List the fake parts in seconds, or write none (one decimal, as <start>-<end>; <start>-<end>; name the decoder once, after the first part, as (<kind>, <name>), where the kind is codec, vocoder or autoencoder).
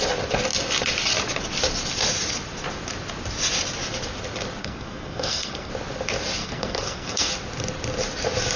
4.6-5.7 (codec, SNAC); 6.4-7.3